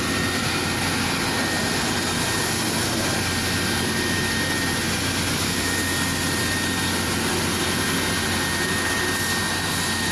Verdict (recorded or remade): recorded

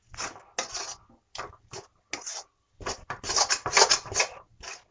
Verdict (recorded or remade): recorded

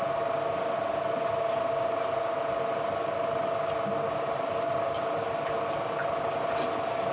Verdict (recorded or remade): recorded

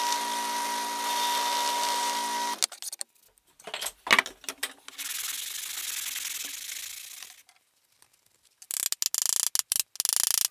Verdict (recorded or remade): recorded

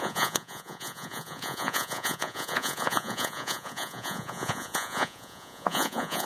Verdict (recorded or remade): remade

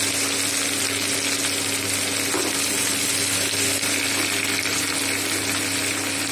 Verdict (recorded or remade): recorded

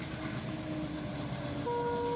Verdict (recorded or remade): recorded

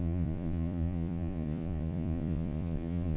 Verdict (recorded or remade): remade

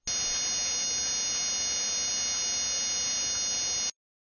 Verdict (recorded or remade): recorded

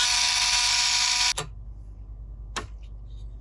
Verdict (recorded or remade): recorded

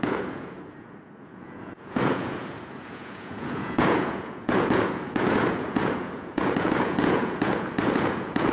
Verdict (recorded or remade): remade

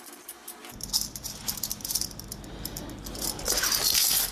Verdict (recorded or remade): recorded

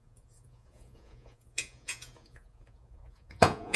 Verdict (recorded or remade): remade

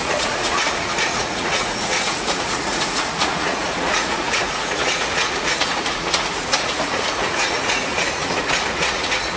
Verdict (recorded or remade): remade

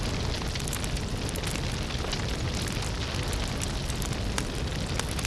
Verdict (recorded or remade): recorded